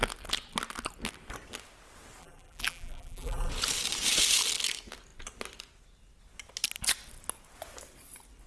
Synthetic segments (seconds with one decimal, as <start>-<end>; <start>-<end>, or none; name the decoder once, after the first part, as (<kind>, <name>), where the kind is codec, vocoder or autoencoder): 2.2-3.5 (vocoder, BigVGAN v2)